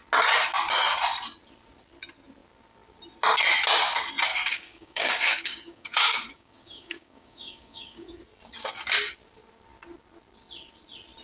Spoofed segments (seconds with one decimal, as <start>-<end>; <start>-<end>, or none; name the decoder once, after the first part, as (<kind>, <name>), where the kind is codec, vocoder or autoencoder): 4.3-8.2 (codec, DAC)